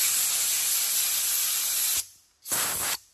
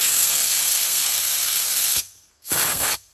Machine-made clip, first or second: second